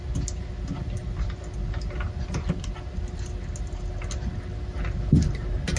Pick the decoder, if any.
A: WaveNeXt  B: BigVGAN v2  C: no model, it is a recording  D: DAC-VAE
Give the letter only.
C